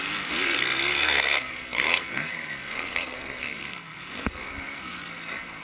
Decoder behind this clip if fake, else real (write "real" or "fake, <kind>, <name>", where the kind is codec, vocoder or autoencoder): fake, codec, SNAC